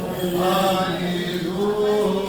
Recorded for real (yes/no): yes